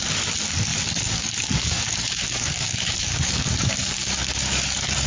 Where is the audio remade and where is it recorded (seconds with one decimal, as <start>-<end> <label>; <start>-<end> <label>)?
0.0-5.1 remade